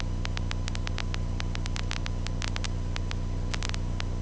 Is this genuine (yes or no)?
yes